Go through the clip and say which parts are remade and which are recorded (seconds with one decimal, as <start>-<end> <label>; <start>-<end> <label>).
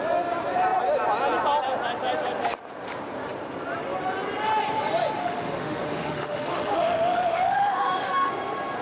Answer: 0.0-5.2 recorded; 5.2-8.3 remade; 8.3-8.8 recorded